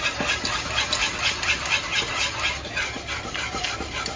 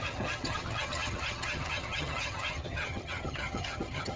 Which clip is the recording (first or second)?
first